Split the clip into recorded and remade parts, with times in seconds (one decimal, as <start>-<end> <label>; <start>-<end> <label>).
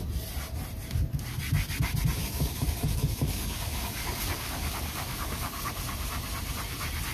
0.0-2.2 recorded; 2.2-5.7 remade; 5.7-7.1 recorded